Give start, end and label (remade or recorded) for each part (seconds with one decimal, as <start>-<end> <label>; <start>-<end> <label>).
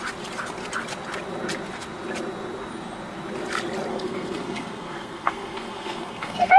0.0-3.9 recorded; 3.9-6.6 remade